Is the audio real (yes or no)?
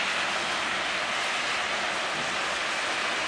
yes